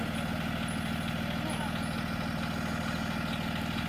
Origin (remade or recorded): recorded